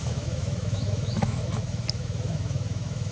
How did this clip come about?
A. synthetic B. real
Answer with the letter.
A